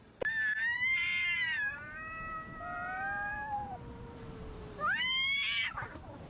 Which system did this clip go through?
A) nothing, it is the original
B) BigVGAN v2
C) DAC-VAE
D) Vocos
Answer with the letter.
B